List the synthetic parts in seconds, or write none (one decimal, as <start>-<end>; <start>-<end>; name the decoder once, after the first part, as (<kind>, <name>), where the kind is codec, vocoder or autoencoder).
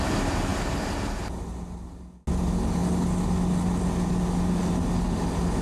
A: none